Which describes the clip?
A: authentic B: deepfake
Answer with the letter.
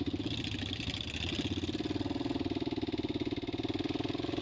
A